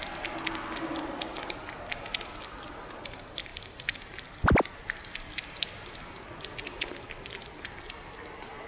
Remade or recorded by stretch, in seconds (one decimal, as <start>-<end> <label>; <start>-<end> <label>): 0.0-8.7 recorded